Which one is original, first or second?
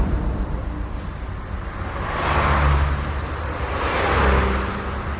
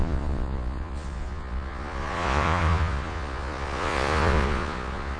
first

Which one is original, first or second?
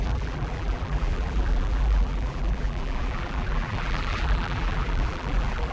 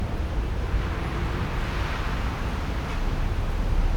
second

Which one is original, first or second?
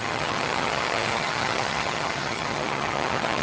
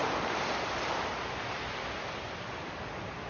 second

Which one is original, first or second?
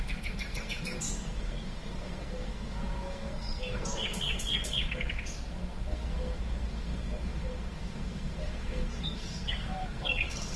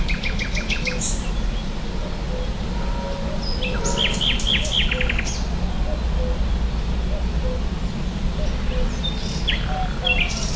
second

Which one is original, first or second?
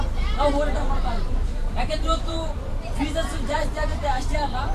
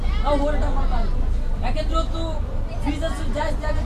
second